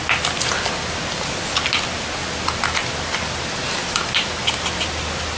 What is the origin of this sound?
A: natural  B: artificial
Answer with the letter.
A